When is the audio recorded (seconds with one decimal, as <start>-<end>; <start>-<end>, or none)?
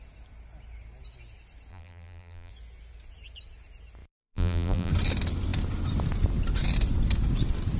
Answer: 0.0-1.7; 2.5-4.1; 4.9-7.8